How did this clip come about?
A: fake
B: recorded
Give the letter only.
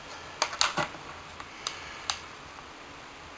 B